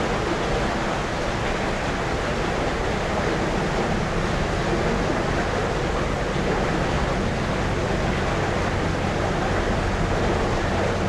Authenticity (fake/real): real